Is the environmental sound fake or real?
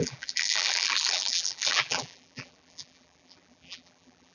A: fake